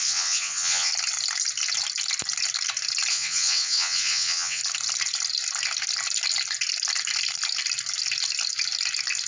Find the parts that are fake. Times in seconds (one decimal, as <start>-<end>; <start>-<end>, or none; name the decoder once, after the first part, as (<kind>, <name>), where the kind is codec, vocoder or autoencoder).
0.0-0.9 (vocoder, WaveNeXt); 3.1-4.6